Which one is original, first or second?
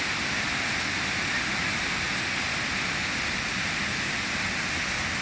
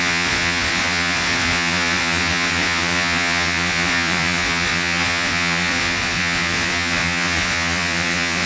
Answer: first